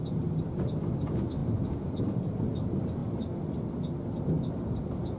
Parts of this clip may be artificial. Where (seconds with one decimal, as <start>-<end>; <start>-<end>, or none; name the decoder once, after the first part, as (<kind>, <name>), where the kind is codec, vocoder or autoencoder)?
none

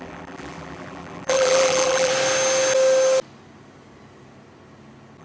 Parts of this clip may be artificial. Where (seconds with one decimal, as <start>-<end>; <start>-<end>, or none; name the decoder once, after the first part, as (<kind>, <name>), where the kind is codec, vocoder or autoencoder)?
0.0-2.1 (vocoder, BigVGAN v2)

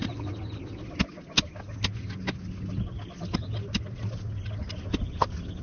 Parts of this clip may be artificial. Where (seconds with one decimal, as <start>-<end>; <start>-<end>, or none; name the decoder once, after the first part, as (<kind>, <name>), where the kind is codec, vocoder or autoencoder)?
none

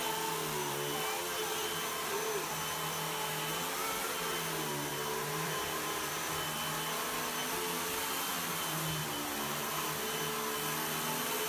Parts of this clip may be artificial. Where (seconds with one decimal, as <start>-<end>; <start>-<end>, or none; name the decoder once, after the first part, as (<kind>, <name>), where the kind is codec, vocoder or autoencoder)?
4.9-6.3 (vocoder, BigVGAN v2); 9.0-10.2

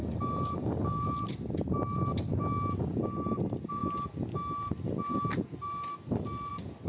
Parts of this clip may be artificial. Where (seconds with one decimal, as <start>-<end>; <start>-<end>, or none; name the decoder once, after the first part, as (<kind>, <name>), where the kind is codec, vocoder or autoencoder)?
0.0-2.3 (vocoder, BigVGAN v2)

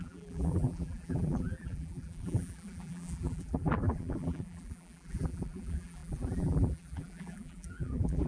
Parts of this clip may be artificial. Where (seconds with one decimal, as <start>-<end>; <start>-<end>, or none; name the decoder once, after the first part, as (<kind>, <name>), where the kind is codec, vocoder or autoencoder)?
0.0-8.3 (vocoder, BigVGAN v2)

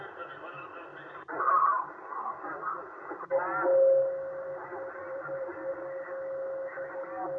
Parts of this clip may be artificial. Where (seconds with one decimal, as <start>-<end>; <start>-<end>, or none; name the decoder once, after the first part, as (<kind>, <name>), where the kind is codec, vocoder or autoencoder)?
0.9-1.9 (vocoder, BigVGAN v2); 5.0-5.7

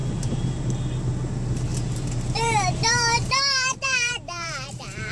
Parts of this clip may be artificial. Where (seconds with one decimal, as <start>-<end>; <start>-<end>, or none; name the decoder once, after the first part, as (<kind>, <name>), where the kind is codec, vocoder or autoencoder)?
0.0-0.6 (vocoder, BigVGAN v2); 1.7-5.1